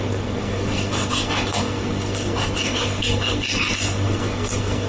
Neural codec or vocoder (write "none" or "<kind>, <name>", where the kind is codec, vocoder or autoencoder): codec, SNAC